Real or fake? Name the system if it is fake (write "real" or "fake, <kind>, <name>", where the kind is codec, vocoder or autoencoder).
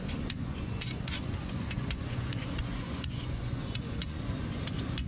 fake, vocoder, Vocos